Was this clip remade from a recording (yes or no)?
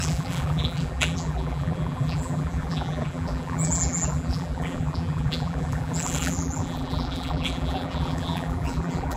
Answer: yes